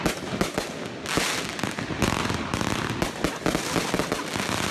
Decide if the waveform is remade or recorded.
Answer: recorded